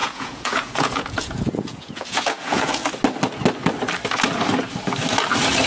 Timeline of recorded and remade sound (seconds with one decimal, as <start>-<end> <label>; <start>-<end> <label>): 0.0-2.8 remade; 2.8-5.7 recorded